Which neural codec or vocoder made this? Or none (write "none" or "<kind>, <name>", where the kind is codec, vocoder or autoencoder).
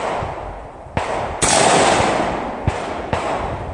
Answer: none